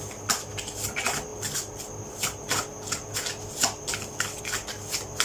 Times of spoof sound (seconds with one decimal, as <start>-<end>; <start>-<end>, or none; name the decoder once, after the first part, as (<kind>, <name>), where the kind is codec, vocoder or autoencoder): none